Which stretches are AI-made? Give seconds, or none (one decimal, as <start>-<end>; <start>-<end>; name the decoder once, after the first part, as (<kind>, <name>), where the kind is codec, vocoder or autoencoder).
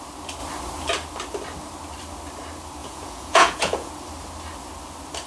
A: 2.8-3.9 (vocoder, Vocos)